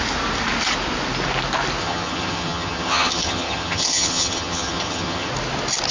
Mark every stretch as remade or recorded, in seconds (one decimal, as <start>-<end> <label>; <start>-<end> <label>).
0.0-1.8 recorded; 1.8-5.3 remade; 5.3-5.9 recorded